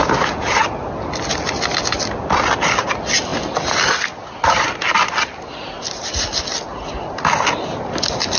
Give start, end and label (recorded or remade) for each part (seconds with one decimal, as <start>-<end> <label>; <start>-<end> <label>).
0.0-8.4 recorded